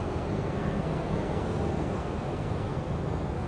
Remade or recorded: remade